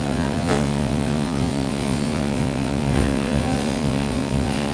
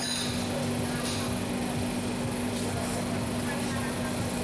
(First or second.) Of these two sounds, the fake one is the first